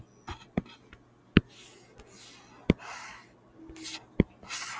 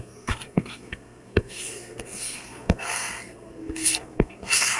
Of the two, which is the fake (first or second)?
second